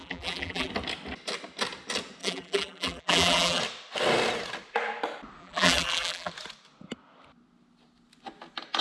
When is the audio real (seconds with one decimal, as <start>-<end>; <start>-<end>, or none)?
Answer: 0.7-2.2; 3.6-5.4; 6.3-8.8